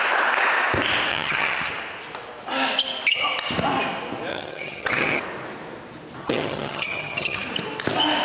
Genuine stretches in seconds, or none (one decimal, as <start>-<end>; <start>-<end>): 0.0-1.1; 1.7-4.3; 5.2-6.2; 7.5-8.2